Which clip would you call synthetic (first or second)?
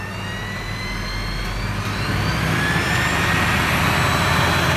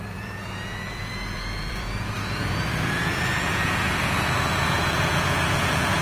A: second